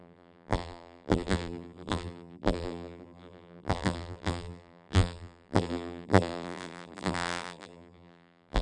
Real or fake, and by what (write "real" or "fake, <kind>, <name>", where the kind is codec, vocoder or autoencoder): fake, vocoder, BigVGAN v2